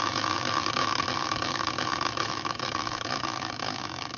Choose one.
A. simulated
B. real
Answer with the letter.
A